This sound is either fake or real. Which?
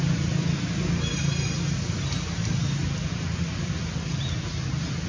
real